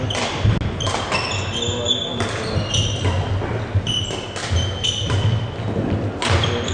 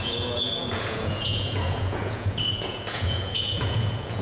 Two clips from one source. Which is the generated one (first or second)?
second